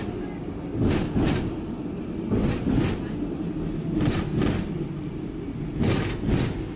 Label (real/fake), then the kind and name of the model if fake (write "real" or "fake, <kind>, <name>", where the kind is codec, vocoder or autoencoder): real